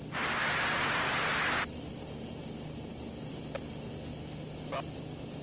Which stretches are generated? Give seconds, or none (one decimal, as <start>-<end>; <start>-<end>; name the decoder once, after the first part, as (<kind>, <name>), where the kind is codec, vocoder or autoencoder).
none